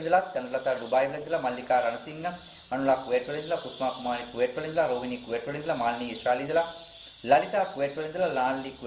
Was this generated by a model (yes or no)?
no